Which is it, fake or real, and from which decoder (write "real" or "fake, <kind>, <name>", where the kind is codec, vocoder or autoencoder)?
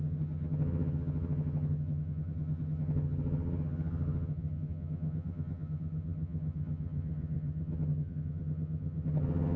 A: fake, vocoder, HiFi-GAN